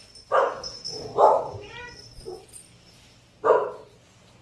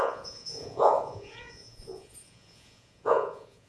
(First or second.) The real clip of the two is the first